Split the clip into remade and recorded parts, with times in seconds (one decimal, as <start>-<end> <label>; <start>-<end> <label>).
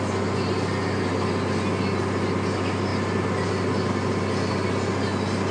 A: 0.0-5.5 recorded